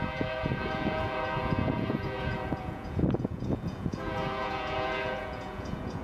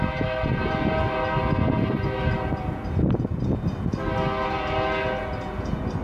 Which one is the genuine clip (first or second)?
second